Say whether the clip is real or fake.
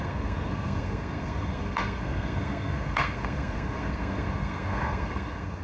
fake